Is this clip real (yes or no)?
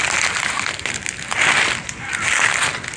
yes